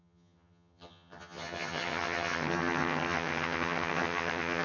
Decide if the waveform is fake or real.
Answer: fake